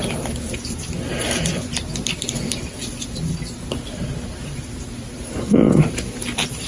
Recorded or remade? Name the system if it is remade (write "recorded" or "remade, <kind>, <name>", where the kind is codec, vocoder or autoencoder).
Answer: remade, vocoder, BigVGAN v2